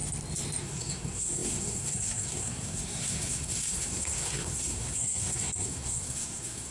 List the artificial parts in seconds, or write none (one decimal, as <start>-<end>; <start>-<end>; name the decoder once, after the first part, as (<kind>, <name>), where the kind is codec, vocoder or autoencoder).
0.6-6.7 (codec, SNAC)